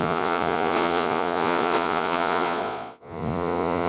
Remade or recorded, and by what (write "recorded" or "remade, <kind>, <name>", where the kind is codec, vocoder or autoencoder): remade, vocoder, Vocos